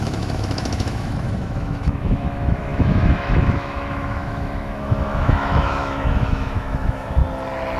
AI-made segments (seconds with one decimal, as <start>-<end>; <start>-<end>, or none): 0.0-7.2